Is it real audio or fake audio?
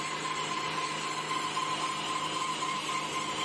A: real